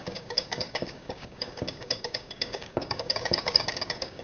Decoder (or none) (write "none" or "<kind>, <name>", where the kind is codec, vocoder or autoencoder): codec, DAC